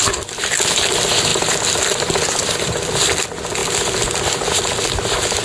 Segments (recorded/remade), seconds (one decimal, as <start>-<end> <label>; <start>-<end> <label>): 0.0-1.3 recorded; 1.3-3.1 remade; 3.1-5.4 recorded